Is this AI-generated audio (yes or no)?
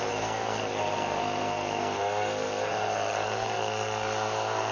yes